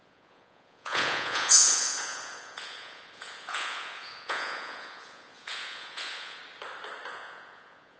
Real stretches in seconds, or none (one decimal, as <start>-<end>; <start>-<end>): 6.4-7.1